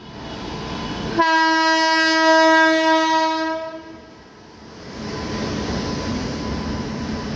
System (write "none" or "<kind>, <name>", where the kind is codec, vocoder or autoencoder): none